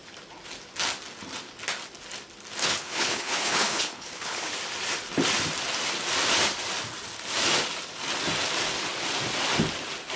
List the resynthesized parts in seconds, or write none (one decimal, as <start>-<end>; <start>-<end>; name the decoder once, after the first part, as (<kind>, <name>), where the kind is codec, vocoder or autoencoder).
2.6-4.5 (codec, HILCodec)